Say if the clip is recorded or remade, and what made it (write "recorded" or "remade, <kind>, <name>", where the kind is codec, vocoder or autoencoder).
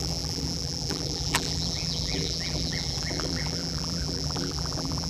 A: remade, vocoder, BigVGAN v2